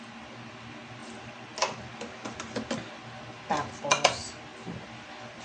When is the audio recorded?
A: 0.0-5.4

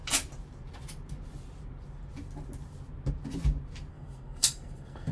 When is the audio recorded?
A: 0.0-3.9

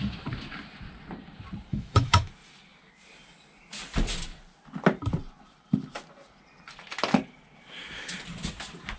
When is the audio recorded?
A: 0.0-1.7; 2.3-9.0

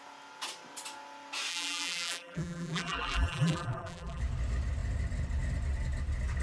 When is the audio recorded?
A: 0.0-1.5; 4.2-6.4

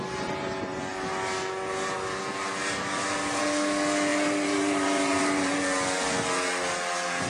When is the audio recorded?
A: 0.0-2.6; 3.4-4.1; 5.6-7.3

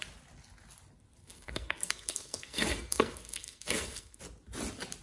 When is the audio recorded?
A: 0.0-1.2; 4.2-5.0

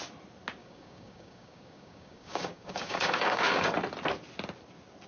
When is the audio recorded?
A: 0.0-0.6; 3.7-5.1

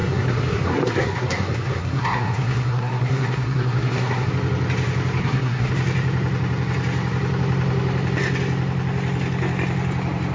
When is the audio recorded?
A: 4.3-5.2; 5.7-10.3